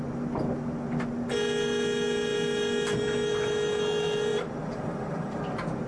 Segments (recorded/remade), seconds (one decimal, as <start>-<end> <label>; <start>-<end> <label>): 0.0-4.3 recorded; 4.3-5.4 remade; 5.4-5.9 recorded